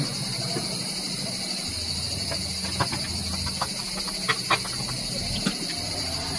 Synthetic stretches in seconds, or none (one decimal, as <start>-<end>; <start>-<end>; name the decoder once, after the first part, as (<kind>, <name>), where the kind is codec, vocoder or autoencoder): none